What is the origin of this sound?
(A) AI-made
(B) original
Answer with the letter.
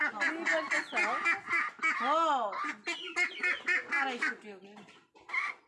B